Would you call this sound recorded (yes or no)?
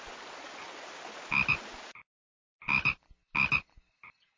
yes